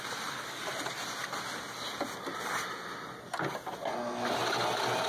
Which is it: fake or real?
real